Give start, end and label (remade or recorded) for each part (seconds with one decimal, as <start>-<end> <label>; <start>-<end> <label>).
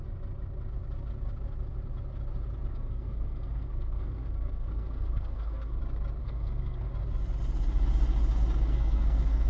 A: 0.0-2.7 recorded; 2.7-5.8 remade; 5.8-6.2 recorded; 6.2-6.9 remade; 6.9-8.7 recorded; 8.7-9.5 remade